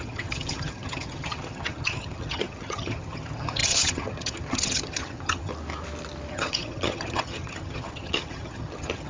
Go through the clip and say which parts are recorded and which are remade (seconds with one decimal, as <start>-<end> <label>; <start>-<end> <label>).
0.0-5.5 remade; 5.5-6.3 recorded; 6.3-9.1 remade